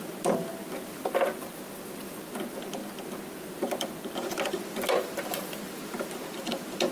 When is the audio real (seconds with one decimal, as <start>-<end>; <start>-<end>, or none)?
0.0-6.9